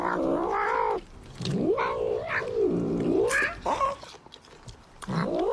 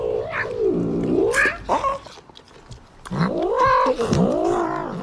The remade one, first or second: first